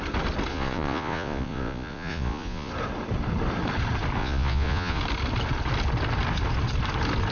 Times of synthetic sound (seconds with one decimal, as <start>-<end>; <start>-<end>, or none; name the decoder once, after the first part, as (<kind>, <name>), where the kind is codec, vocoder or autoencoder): 0.5-2.7 (vocoder, Vocos); 4.2-5.0